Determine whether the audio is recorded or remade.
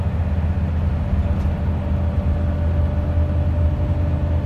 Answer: recorded